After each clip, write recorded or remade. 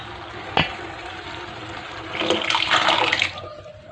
recorded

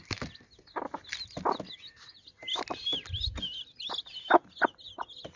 recorded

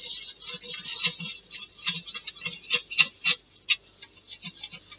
recorded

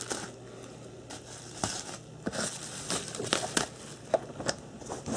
recorded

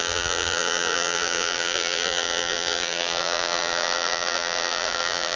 remade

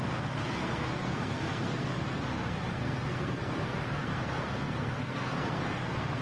remade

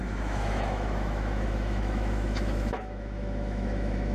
remade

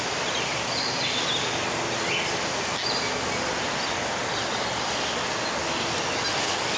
recorded